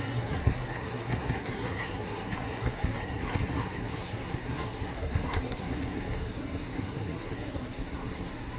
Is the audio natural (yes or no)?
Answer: no